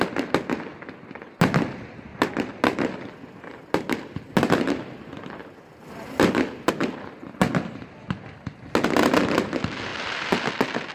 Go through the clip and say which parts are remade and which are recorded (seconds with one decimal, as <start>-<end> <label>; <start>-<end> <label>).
0.0-10.9 recorded